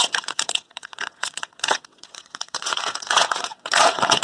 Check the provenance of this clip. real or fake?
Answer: fake